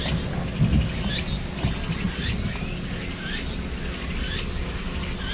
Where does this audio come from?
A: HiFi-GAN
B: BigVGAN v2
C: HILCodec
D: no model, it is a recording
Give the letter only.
D